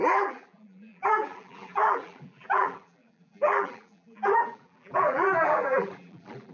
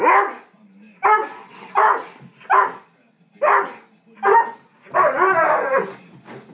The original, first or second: second